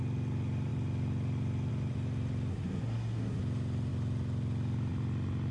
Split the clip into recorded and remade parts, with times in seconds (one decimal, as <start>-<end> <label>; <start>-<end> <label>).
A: 0.0-2.5 recorded; 2.5-3.4 remade; 3.4-5.5 recorded